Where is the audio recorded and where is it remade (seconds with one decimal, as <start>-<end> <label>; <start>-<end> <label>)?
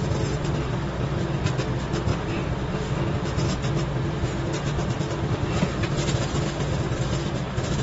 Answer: 0.0-7.8 recorded